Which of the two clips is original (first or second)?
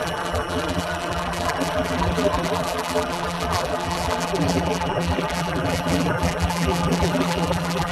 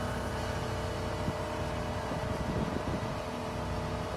second